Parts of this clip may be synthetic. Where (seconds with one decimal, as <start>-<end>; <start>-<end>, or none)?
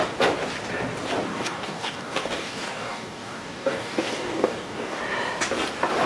1.3-5.0